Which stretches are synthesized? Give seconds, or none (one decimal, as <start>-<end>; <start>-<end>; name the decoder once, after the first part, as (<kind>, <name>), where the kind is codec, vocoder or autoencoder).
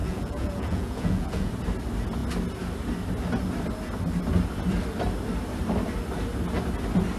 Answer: 0.0-1.5 (vocoder, Vocos)